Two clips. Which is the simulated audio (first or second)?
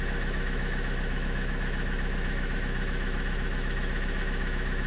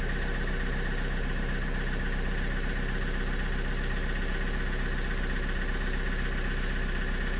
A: first